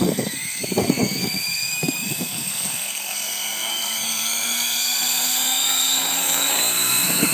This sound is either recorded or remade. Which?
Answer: remade